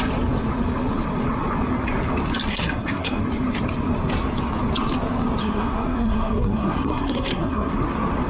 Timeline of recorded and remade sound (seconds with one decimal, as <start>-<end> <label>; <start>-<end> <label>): 0.0-2.5 recorded; 2.5-3.2 remade; 3.2-5.4 recorded; 5.4-7.7 remade; 7.7-8.3 recorded